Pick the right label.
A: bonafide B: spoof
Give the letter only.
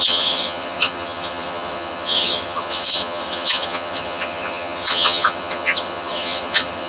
B